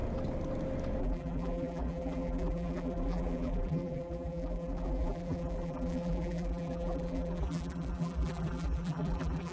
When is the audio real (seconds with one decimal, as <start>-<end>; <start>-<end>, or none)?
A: 0.0-1.0